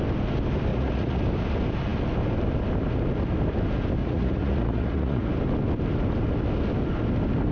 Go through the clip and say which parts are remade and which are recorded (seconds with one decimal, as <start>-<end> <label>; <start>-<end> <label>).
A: 0.0-0.7 recorded; 0.7-1.2 remade; 1.2-4.0 recorded; 4.0-5.3 remade; 5.3-7.5 recorded